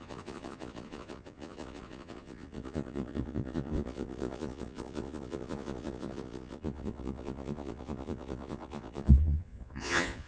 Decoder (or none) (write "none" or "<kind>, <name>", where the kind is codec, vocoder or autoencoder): vocoder, Vocos